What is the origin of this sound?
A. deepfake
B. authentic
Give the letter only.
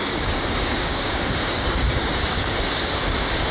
A